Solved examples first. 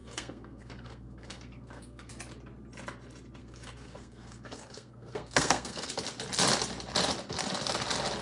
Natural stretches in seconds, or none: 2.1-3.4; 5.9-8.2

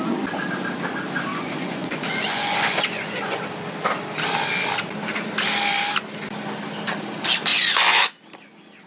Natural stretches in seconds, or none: 0.0-1.3; 3.4-7.5; 8.1-8.9

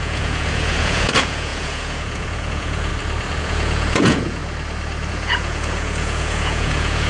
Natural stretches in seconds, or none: 2.9-3.4; 4.4-5.1